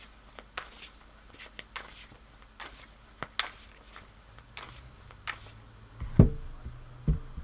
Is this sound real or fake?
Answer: real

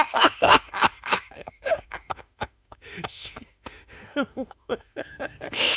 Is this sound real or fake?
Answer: fake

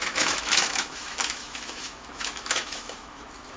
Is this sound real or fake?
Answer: fake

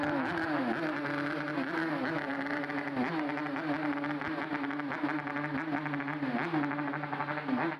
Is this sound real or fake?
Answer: real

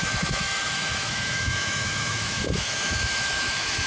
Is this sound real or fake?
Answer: fake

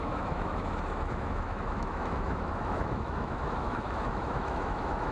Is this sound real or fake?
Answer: fake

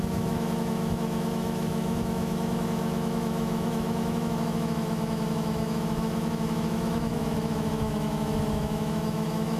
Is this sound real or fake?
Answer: fake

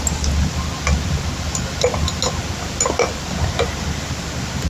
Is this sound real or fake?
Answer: real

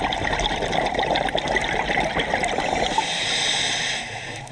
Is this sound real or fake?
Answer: real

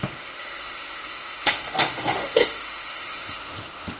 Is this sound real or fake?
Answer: fake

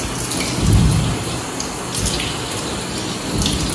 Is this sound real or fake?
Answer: real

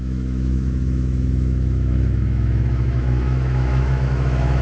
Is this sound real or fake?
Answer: fake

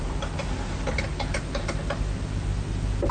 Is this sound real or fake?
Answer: real